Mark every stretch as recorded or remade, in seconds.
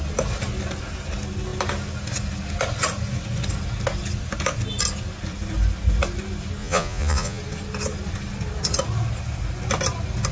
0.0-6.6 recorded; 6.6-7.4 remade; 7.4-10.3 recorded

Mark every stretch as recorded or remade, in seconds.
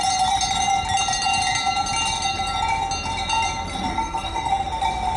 0.0-3.9 recorded; 3.9-4.5 remade; 4.5-5.2 recorded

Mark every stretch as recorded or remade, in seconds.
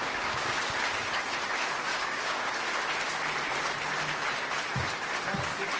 0.0-0.6 remade; 0.6-1.9 recorded; 1.9-2.5 remade; 2.5-5.8 recorded